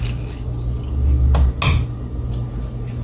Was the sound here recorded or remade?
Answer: recorded